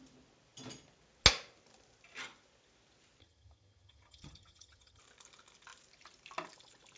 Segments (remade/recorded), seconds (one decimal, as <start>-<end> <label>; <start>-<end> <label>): 0.0-3.2 recorded; 3.2-5.0 remade; 5.0-7.0 recorded